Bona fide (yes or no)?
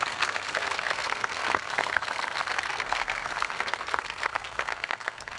no